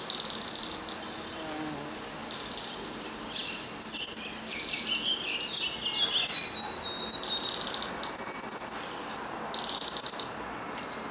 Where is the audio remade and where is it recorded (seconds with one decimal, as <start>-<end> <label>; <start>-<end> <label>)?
0.0-11.1 recorded